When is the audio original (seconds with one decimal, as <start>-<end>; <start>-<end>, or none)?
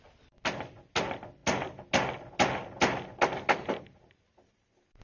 0.0-5.0